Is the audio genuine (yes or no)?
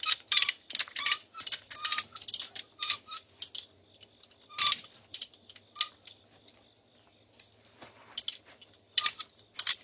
yes